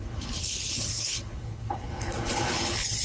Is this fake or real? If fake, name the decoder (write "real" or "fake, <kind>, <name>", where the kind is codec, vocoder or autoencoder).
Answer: fake, codec, HILCodec